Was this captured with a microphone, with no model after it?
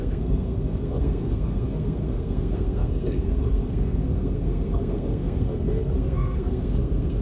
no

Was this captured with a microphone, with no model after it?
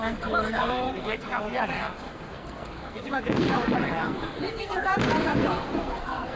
no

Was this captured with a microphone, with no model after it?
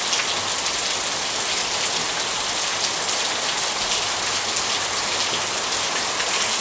yes